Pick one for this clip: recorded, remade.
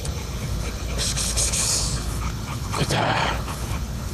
remade